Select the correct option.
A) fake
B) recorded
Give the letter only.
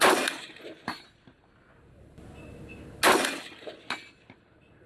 B